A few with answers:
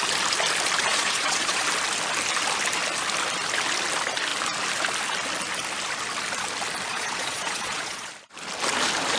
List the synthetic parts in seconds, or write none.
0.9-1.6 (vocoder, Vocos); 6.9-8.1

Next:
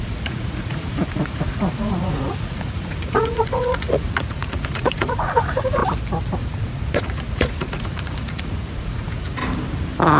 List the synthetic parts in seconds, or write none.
0.0-5.8 (vocoder, Vocos); 6.3-9.4

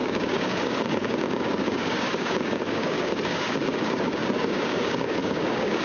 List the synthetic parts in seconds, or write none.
0.0-5.8 (codec, DAC)

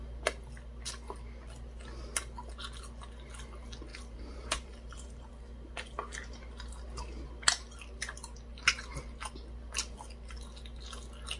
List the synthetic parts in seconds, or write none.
3.9-5.3 (vocoder, BigVGAN v2)

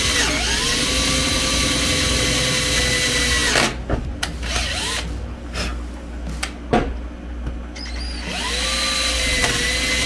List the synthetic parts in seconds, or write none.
none

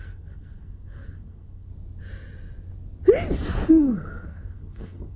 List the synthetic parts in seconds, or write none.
0.0-1.7 (codec, SNAC); 3.7-5.2

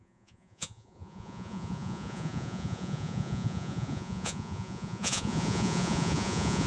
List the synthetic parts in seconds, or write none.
0.0-6.7 (vocoder, Vocos)